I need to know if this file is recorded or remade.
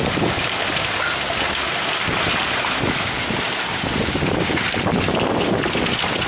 remade